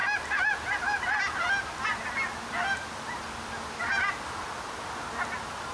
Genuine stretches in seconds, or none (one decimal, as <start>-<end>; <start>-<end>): 0.0-5.7